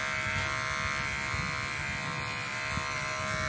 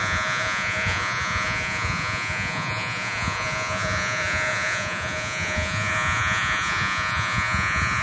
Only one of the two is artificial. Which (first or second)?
second